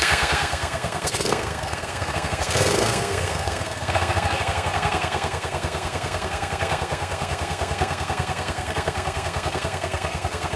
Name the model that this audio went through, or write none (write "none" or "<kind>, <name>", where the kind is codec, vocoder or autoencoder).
codec, SNAC